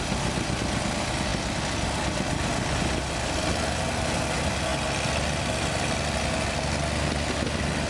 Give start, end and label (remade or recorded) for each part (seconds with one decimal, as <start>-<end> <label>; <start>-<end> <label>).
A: 0.0-7.9 recorded